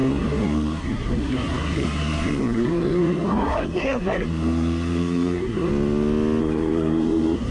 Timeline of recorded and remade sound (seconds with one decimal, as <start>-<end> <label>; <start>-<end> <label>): 0.0-5.7 remade; 5.7-6.4 recorded; 6.4-7.5 remade